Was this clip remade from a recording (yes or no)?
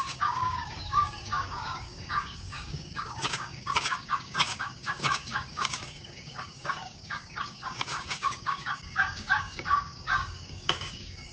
yes